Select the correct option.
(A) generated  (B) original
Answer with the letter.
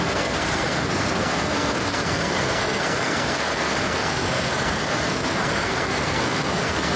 A